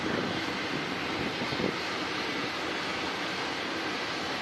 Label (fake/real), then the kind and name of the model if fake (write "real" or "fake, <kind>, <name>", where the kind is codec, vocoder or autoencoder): real